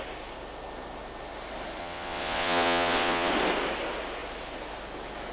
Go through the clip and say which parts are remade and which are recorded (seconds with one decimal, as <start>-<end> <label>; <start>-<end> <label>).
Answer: 0.0-1.8 recorded; 1.8-3.3 remade; 3.3-5.3 recorded